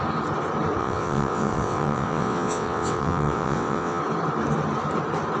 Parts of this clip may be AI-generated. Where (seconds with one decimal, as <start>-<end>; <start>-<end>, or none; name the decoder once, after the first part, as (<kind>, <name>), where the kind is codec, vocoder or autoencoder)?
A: 0.8-4.0 (vocoder, WaveNeXt)